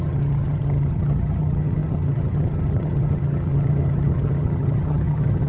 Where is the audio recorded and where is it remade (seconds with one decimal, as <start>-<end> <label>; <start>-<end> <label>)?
0.0-5.5 remade